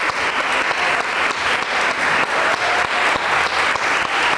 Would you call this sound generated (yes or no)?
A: no